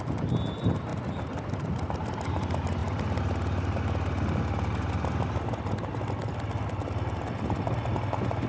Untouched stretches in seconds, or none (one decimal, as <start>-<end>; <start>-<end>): 0.0-8.5

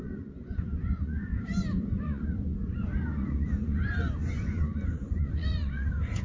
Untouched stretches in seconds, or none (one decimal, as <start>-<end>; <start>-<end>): 1.3-2.0

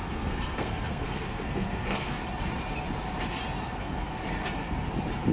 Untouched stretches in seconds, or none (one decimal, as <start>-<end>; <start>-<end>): 2.2-3.8; 4.2-5.3

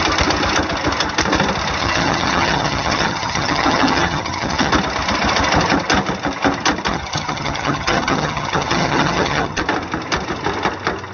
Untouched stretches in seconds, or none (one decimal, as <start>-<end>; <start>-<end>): 0.0-1.8; 4.7-6.9; 9.6-11.1

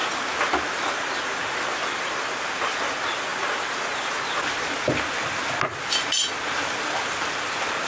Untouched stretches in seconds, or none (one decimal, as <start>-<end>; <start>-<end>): 0.0-7.9

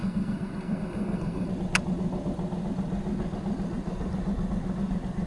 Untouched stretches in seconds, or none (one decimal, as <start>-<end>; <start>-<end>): 1.5-5.3

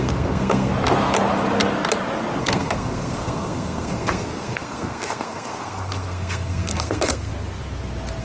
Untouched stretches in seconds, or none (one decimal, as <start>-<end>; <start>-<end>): 0.7-2.4; 7.3-8.2

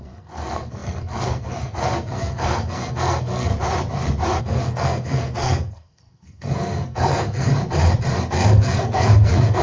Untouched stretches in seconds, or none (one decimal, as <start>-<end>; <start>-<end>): 3.5-4.4; 7.5-8.3